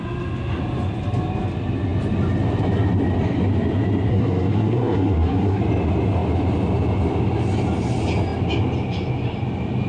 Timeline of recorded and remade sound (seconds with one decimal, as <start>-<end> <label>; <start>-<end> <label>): 0.0-4.1 recorded; 4.1-5.6 remade; 5.6-9.9 recorded

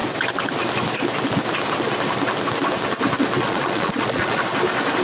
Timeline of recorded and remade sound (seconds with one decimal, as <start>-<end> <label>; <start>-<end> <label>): 0.0-3.4 recorded; 3.4-4.4 remade; 4.4-5.0 recorded

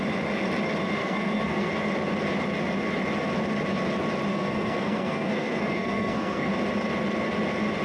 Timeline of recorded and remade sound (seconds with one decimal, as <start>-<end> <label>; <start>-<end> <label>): 0.0-1.0 recorded; 1.0-1.7 remade; 1.7-4.3 recorded; 4.3-6.5 remade; 6.5-7.8 recorded

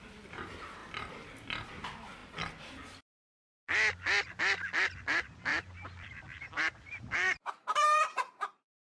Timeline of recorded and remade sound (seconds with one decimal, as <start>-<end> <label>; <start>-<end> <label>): 0.0-5.5 recorded; 5.5-8.9 remade